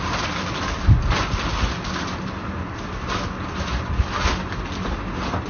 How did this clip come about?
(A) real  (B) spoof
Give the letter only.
A